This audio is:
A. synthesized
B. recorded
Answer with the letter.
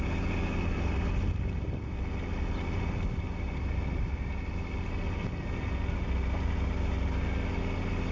B